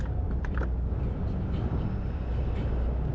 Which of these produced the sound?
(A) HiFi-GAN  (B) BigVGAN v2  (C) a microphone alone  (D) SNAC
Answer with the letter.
C